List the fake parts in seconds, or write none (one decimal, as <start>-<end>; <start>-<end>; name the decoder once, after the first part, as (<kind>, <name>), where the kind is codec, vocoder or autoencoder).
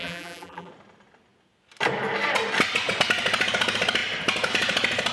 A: 0.0-0.7 (vocoder, BigVGAN v2)